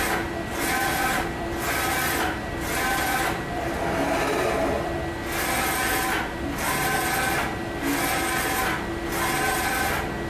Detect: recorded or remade recorded